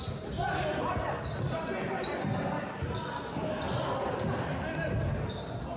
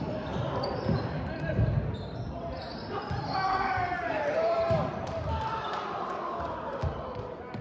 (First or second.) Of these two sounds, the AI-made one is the second